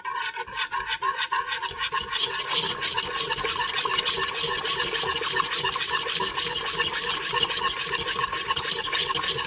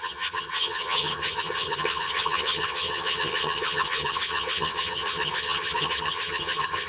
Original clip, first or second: first